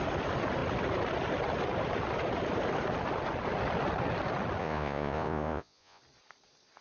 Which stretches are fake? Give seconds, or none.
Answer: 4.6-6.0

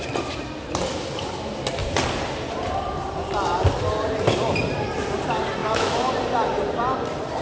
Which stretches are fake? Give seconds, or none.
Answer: 5.6-6.1